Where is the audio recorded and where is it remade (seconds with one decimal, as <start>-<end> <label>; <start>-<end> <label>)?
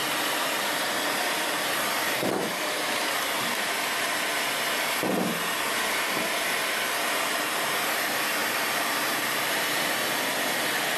0.0-4.1 remade; 4.1-8.4 recorded; 8.4-9.8 remade; 9.8-11.0 recorded